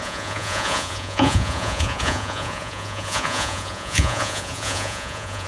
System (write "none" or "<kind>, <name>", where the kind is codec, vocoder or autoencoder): vocoder, Vocos